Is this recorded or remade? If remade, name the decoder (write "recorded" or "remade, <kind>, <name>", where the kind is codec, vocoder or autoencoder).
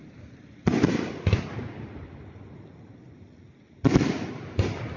recorded